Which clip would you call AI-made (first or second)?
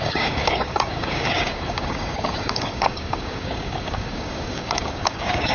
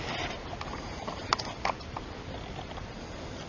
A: first